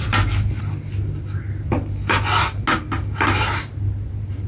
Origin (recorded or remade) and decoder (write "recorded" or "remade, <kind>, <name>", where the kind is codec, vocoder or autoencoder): recorded